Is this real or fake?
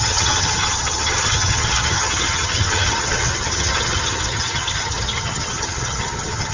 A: fake